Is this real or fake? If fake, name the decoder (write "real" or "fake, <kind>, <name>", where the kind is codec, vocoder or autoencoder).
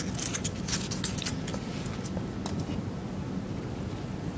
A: real